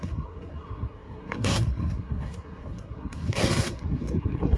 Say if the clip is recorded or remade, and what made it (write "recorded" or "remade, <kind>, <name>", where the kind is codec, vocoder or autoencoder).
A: remade, codec, SNAC